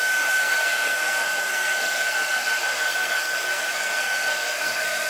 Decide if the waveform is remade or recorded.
remade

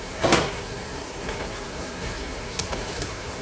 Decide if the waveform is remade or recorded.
remade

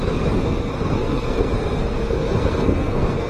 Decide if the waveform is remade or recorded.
remade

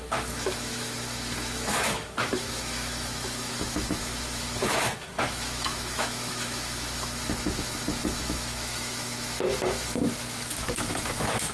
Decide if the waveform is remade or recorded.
remade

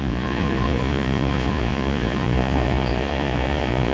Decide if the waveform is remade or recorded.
remade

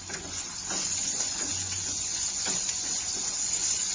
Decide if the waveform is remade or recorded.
remade